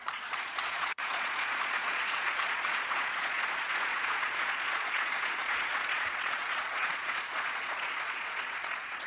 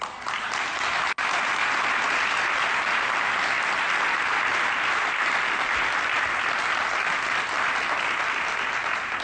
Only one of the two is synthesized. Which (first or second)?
first